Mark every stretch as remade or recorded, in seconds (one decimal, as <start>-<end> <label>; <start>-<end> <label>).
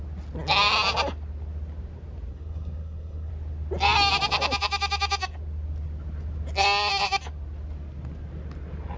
0.0-2.3 recorded; 2.3-3.3 remade; 3.3-9.0 recorded